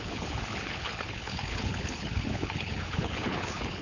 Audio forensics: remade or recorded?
remade